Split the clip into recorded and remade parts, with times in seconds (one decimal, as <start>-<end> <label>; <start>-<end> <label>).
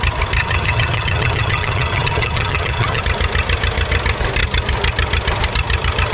0.0-0.4 recorded; 0.4-3.0 remade; 3.0-6.1 recorded